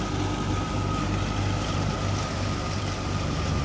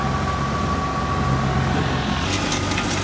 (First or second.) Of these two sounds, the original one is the second